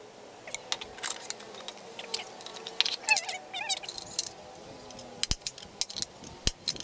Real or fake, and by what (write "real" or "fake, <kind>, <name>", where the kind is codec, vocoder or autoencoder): real